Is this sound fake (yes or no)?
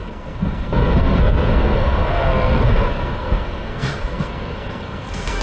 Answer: yes